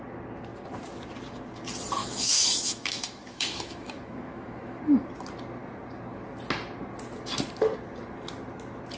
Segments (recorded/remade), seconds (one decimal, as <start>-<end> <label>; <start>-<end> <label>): 0.0-2.0 recorded; 2.0-4.8 remade; 4.8-9.0 recorded